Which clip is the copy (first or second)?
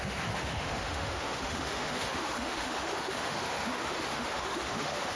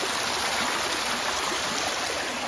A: first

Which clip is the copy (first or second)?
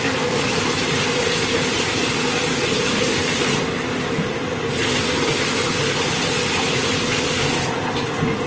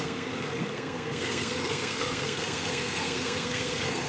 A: second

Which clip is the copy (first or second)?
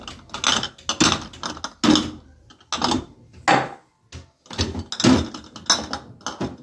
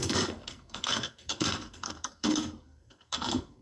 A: second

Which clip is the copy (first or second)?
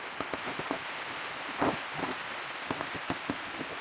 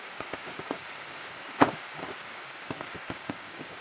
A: second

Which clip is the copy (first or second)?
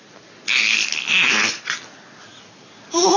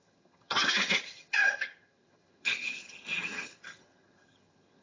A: second